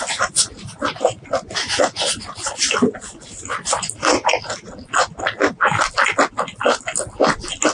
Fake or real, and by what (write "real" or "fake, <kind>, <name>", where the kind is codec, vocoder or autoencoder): real